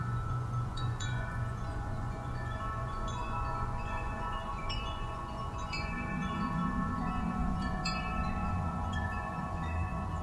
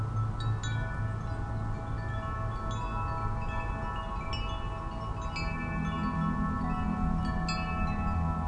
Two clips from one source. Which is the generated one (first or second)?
first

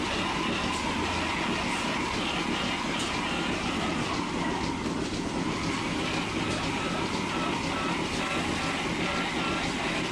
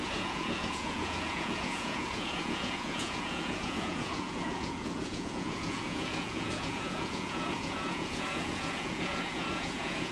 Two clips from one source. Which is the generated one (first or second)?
second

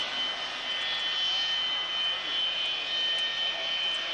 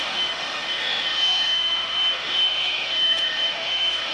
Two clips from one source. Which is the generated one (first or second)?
second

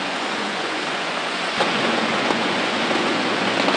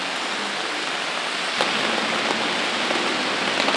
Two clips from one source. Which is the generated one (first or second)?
first